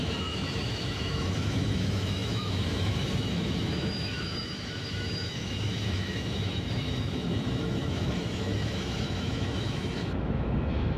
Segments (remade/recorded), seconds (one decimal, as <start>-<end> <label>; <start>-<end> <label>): 0.0-11.0 remade